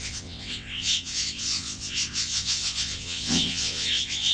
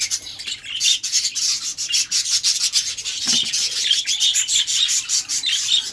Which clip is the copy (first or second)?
first